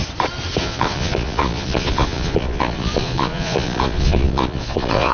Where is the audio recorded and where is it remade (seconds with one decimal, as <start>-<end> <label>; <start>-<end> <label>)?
0.0-0.6 recorded; 0.6-5.1 remade